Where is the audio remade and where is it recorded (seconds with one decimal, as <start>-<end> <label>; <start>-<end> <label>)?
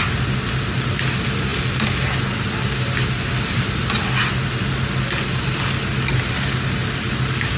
0.0-7.6 recorded